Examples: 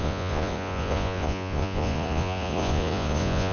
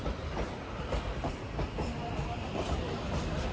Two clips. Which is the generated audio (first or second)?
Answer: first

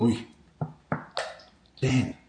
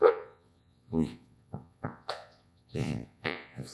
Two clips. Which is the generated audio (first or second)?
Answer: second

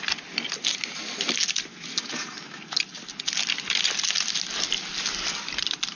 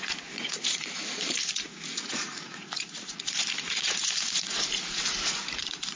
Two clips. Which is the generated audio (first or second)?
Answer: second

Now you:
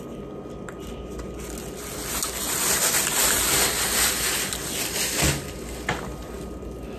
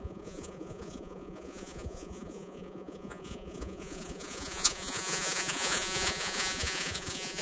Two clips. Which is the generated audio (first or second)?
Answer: second